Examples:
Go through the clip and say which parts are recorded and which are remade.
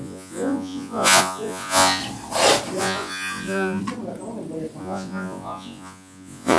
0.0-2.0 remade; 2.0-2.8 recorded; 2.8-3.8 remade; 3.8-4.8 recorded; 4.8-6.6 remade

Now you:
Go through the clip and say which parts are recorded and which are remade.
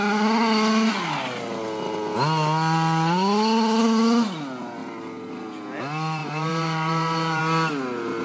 0.0-6.2 recorded; 6.2-7.4 remade; 7.4-8.2 recorded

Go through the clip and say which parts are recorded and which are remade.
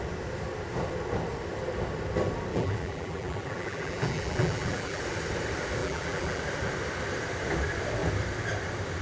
0.0-2.5 recorded; 2.5-5.0 remade; 5.0-5.8 recorded; 5.8-6.4 remade; 6.4-9.0 recorded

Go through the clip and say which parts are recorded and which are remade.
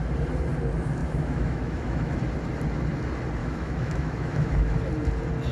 0.0-1.0 recorded; 1.0-2.1 remade; 2.1-3.4 recorded; 3.4-4.9 remade; 4.9-5.5 recorded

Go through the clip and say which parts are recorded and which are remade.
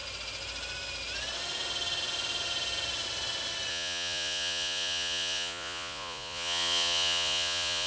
0.0-3.7 recorded; 3.7-7.9 remade